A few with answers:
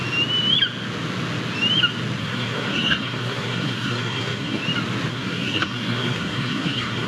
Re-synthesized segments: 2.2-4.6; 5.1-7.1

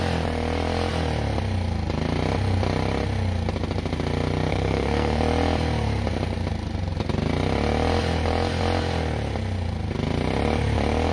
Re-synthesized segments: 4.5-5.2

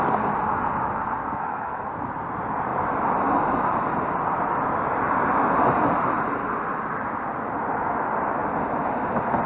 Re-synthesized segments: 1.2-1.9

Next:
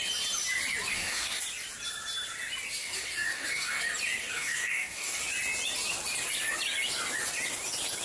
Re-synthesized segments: 0.9-1.4; 2.8-3.8; 4.2-5.2